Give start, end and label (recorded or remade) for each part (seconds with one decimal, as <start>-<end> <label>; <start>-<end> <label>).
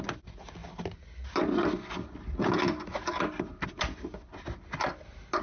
0.0-5.4 recorded